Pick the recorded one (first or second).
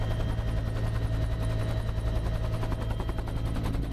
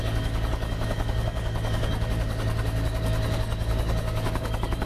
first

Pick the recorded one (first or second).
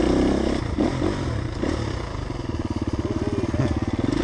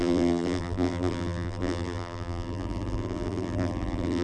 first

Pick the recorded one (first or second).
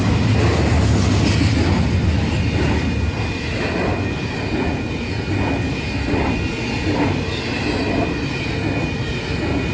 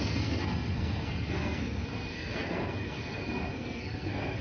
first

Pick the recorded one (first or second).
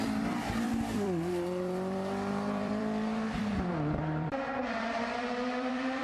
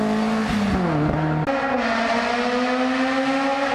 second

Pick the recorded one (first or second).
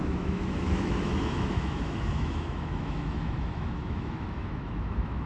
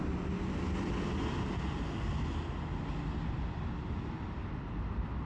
second